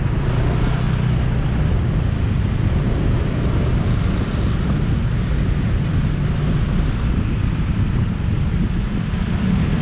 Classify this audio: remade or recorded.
recorded